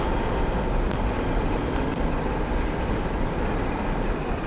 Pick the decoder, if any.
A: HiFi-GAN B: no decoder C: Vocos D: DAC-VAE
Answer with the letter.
B